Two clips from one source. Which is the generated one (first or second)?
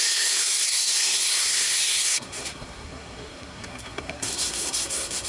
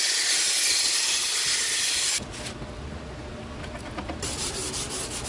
first